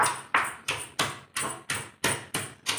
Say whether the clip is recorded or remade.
recorded